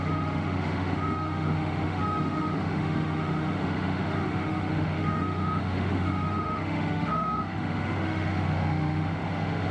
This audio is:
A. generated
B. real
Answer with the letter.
A